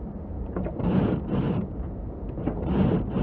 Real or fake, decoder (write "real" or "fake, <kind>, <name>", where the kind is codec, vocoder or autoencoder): fake, vocoder, BigVGAN v2